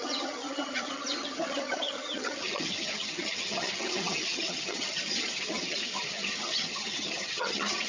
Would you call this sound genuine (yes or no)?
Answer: no